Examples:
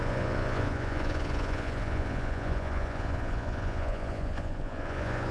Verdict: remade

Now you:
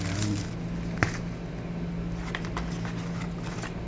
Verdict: recorded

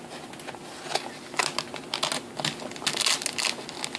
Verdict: recorded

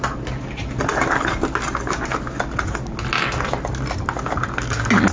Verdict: recorded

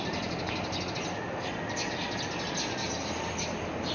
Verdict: recorded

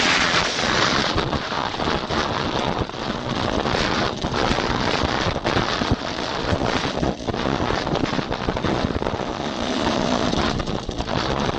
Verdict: remade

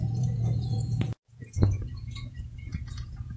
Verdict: remade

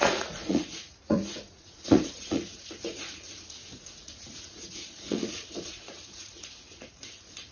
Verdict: remade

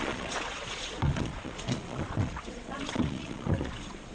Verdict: remade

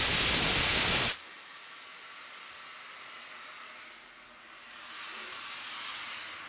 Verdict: recorded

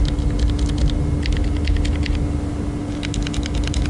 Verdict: recorded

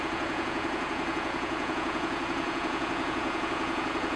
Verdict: remade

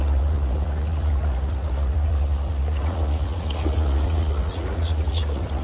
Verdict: remade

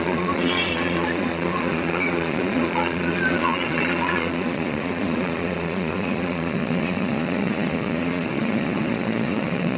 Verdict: remade